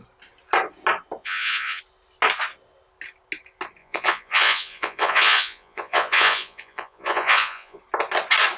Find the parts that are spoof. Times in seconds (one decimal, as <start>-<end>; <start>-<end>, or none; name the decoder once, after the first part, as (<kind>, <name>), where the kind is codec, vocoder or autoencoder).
1.2-1.8 (vocoder, Vocos); 3.8-7.8